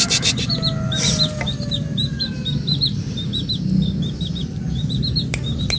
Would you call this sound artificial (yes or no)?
no